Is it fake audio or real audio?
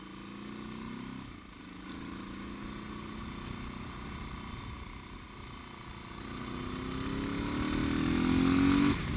real